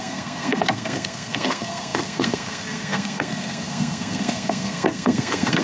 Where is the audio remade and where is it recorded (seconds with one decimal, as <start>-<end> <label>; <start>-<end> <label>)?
0.0-5.6 remade